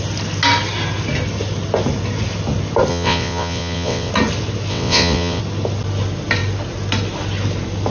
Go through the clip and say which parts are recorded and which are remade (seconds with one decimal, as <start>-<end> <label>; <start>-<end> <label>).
0.0-2.9 recorded; 2.9-4.1 remade; 4.1-4.7 recorded; 4.7-5.4 remade; 5.4-7.9 recorded

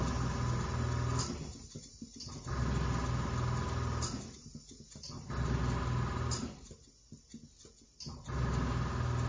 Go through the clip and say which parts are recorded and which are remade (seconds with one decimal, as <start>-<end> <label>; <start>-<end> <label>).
0.0-9.3 recorded

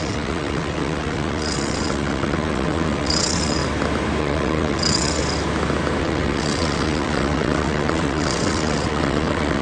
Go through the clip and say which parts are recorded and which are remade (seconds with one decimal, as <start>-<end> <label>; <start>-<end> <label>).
0.0-3.6 remade; 3.6-4.2 recorded; 4.2-5.2 remade; 5.2-6.0 recorded; 6.0-9.6 remade

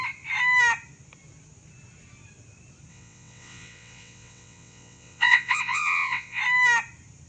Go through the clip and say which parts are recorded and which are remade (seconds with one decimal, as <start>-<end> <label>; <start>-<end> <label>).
0.0-2.9 recorded; 2.9-6.4 remade; 6.4-7.3 recorded

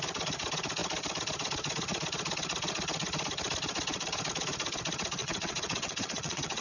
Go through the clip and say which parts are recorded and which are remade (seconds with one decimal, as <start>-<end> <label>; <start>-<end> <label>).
0.0-5.2 recorded; 5.2-6.6 remade

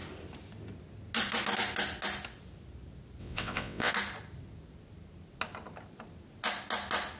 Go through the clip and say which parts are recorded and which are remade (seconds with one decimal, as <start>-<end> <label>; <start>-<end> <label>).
0.0-3.2 recorded; 3.2-3.9 remade; 3.9-7.2 recorded

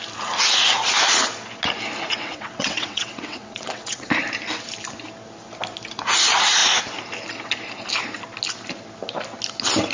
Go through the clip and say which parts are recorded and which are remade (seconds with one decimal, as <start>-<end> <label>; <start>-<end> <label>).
0.0-2.1 recorded; 2.1-4.1 remade; 4.1-9.9 recorded